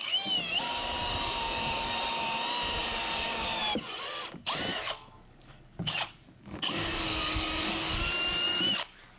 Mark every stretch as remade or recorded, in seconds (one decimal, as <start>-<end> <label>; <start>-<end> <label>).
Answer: 0.0-2.2 remade; 2.2-2.8 recorded; 2.8-3.6 remade; 3.6-4.7 recorded; 4.7-9.2 remade